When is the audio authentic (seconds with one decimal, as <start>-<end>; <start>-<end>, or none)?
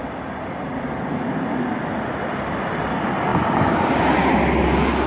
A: 3.3-4.3